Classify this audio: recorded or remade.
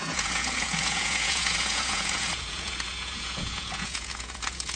remade